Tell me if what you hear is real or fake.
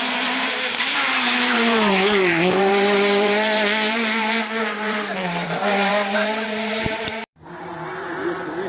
fake